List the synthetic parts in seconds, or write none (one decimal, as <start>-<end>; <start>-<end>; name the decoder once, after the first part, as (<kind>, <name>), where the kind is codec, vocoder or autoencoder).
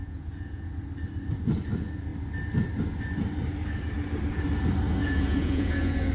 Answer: 0.0-0.7 (vocoder, Vocos); 5.0-6.1